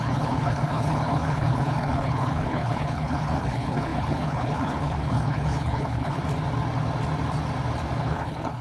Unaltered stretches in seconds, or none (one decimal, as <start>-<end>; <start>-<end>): 6.2-8.0